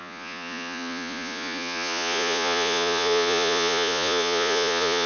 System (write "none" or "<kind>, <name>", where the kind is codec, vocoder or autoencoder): vocoder, Vocos